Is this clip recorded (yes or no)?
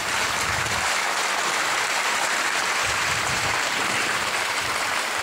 no